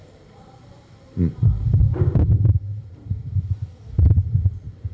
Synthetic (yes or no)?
yes